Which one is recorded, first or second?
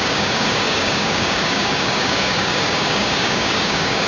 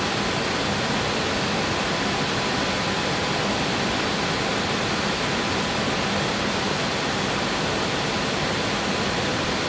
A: second